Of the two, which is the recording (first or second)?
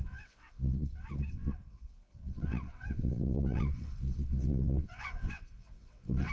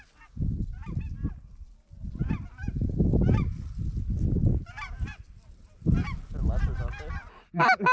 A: second